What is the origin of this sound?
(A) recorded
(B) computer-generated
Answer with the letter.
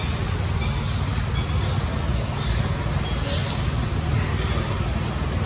A